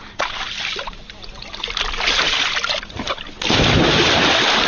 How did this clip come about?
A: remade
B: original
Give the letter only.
B